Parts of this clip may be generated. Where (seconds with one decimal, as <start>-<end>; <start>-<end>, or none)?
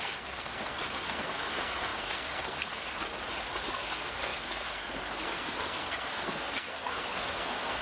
0.0-3.1; 3.7-7.8